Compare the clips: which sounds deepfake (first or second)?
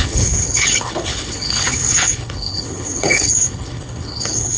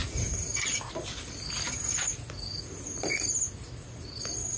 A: first